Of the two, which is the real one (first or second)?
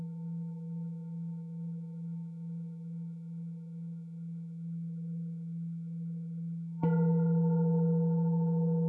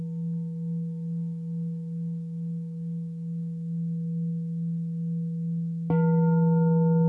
second